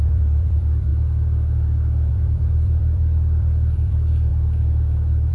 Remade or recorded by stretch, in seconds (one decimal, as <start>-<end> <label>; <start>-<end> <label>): 0.0-0.9 remade; 0.9-2.1 recorded; 2.1-4.3 remade; 4.3-5.3 recorded